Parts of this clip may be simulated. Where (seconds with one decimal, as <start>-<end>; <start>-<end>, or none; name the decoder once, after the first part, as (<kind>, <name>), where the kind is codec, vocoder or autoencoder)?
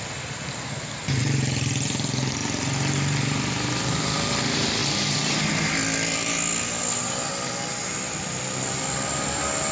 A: none